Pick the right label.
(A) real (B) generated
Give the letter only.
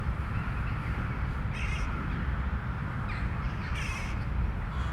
A